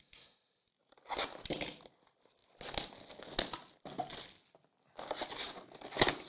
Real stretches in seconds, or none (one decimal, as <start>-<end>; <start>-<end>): 0.0-6.3